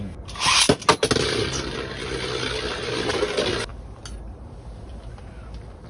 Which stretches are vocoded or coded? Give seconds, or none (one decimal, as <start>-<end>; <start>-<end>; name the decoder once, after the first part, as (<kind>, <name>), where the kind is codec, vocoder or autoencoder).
none

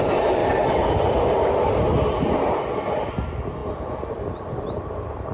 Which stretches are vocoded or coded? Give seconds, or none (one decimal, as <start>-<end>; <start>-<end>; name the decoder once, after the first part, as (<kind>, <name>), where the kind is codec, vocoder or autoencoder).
none

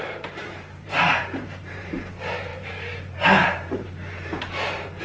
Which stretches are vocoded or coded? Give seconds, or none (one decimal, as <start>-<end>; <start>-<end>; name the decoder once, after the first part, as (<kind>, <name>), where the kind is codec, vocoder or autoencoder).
0.0-5.0 (vocoder, BigVGAN v2)

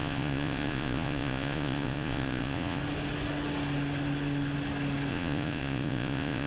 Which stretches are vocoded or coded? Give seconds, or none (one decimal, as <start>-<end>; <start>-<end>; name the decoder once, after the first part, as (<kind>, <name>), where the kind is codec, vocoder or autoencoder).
0.0-2.8 (vocoder, Vocos); 5.1-6.5

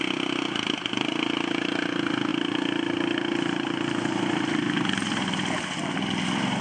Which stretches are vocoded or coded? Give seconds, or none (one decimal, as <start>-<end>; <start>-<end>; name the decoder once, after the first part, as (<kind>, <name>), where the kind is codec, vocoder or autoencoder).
none

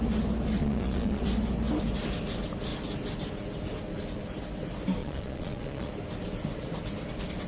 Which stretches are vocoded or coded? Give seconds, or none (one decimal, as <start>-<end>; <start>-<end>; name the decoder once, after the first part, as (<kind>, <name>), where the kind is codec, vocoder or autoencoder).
0.6-1.2 (vocoder, Vocos); 5.0-5.9